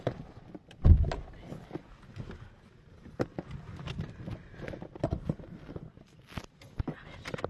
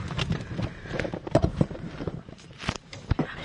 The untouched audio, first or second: first